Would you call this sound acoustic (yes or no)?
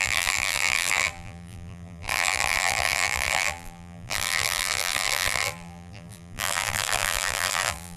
no